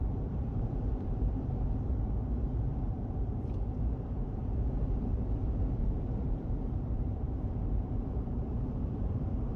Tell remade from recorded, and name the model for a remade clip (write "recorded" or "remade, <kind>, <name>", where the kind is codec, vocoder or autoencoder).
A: remade, vocoder, BigVGAN v2